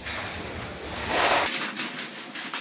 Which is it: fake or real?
real